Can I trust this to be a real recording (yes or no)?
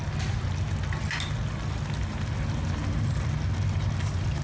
yes